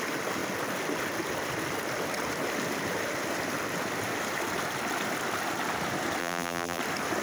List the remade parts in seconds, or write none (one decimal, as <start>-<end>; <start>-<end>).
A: 6.2-6.8